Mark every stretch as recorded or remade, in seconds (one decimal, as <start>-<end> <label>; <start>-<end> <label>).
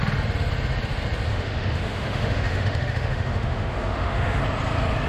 0.0-1.3 recorded; 1.3-4.4 remade; 4.4-5.1 recorded